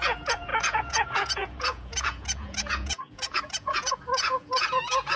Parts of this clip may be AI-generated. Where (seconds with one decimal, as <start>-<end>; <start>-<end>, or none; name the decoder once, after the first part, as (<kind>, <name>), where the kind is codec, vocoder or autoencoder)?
0.0-5.2 (vocoder, Vocos)